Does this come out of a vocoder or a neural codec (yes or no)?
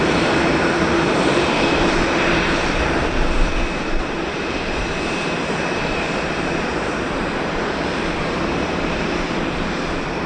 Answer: yes